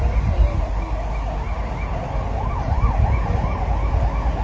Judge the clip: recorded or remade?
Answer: recorded